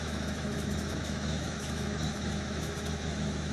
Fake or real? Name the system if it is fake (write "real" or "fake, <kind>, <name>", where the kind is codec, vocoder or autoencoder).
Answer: fake, autoencoder, DAC-VAE